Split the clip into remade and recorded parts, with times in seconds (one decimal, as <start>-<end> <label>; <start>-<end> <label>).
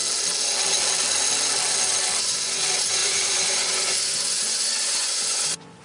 0.0-2.2 recorded; 2.2-5.8 remade